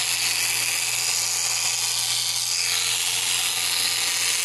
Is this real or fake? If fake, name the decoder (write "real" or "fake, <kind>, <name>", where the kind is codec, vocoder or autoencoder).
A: real